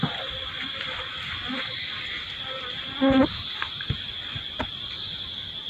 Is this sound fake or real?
real